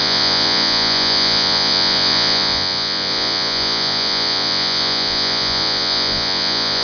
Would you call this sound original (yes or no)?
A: no